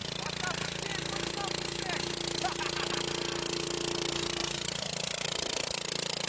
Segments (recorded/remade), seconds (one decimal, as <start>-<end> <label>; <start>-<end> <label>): 0.0-6.3 recorded